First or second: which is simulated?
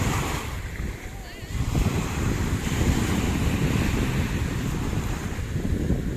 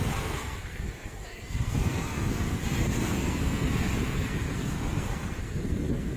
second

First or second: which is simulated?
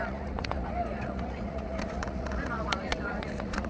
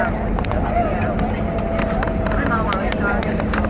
first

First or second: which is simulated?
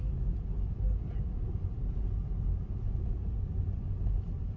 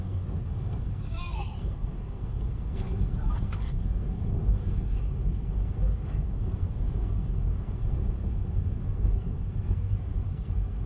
second